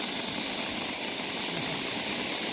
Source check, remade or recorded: recorded